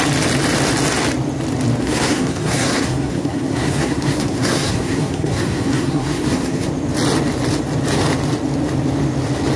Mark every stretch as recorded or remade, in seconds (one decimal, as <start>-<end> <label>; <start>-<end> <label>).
0.0-1.8 recorded; 1.8-6.7 remade; 6.7-9.6 recorded